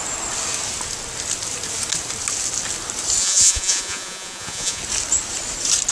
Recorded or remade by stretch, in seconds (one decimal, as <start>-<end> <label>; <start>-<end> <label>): 0.0-3.2 recorded; 3.2-4.8 remade; 4.8-5.9 recorded